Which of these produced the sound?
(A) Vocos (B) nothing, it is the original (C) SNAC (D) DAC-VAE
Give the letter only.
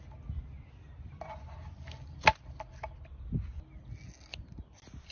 B